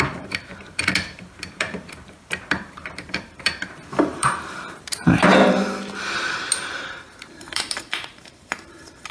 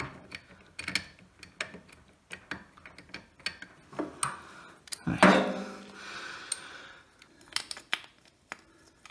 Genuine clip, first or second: second